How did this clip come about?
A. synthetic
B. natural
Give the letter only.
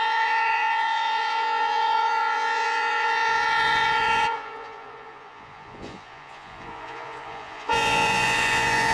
A